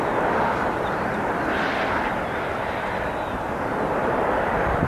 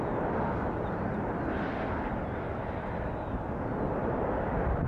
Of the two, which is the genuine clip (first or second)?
second